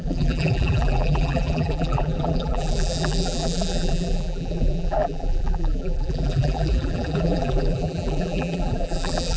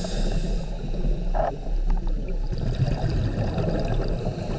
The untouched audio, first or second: second